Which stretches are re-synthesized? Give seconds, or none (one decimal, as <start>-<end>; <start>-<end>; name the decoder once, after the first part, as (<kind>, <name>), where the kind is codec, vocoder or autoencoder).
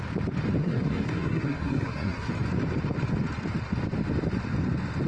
0.6-2.3 (codec, SNAC)